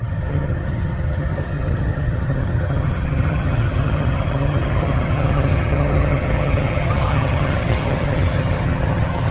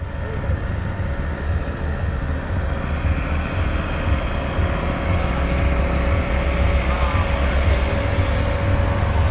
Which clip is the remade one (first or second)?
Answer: first